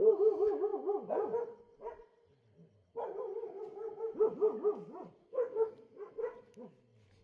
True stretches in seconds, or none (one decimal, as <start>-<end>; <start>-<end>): 0.0-5.2; 5.7-7.2